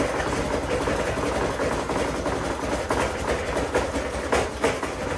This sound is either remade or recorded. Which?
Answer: recorded